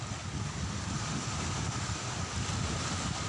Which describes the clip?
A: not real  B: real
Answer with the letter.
B